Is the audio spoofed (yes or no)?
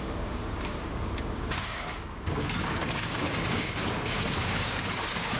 yes